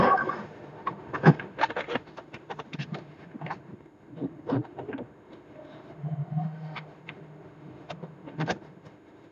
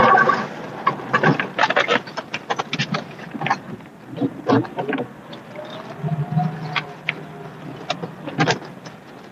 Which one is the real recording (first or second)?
second